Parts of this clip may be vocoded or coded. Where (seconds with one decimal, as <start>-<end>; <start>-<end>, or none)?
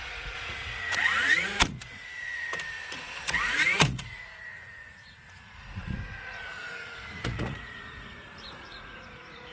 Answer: 0.0-9.5